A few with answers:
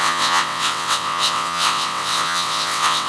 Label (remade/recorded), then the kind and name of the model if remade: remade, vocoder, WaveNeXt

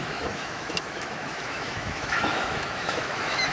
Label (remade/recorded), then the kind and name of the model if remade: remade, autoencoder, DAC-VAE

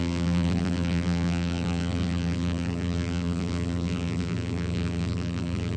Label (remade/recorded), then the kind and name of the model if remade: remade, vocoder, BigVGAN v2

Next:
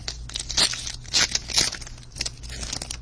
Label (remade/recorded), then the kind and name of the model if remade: recorded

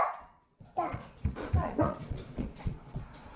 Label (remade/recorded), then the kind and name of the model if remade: remade, vocoder, Vocos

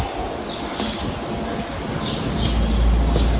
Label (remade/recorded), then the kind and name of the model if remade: recorded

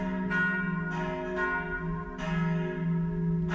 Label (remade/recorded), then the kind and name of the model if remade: recorded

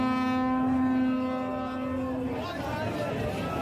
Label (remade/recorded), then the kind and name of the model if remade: recorded